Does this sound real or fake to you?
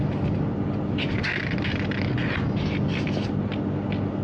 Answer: real